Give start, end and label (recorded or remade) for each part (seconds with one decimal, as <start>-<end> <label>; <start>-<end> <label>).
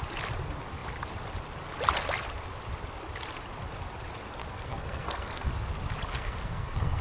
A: 0.0-4.4 recorded; 4.4-5.5 remade; 5.5-6.1 recorded; 6.1-7.0 remade